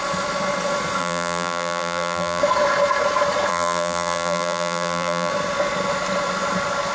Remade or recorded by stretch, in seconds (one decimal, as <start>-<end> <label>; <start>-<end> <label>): 0.0-1.0 recorded; 1.0-2.4 remade; 2.4-3.5 recorded; 3.5-5.3 remade; 5.3-6.9 recorded